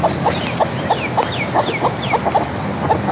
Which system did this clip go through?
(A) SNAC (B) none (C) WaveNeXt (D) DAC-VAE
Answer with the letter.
B